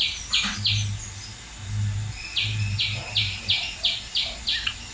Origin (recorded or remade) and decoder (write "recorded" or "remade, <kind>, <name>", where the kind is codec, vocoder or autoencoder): recorded